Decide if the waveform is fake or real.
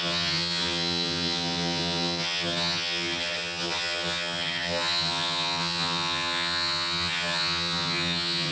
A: fake